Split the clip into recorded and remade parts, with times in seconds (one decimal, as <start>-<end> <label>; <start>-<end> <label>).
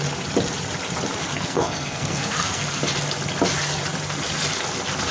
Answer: 0.0-1.2 recorded; 1.2-2.8 remade; 2.8-5.1 recorded